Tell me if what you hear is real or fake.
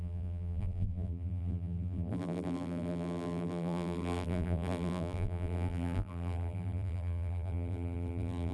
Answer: fake